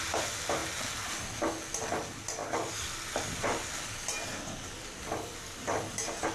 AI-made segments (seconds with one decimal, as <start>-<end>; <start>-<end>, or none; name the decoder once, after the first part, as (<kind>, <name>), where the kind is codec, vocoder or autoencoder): none